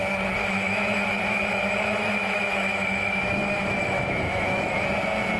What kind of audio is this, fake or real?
fake